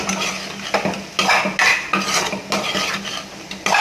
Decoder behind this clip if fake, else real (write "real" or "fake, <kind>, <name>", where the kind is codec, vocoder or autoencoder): real